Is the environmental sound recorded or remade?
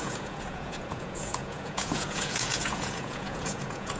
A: remade